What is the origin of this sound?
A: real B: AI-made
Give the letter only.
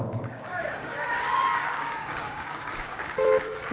B